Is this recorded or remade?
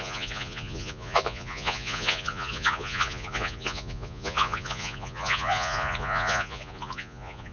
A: remade